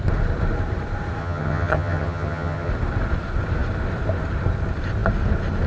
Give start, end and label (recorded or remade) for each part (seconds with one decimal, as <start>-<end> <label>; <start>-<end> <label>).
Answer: 0.0-1.2 recorded; 1.2-2.7 remade; 2.7-5.7 recorded